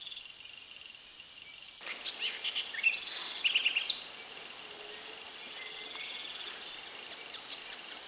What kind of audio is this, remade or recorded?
recorded